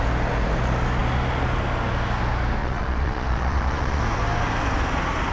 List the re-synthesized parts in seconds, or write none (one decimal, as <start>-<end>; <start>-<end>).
2.6-4.0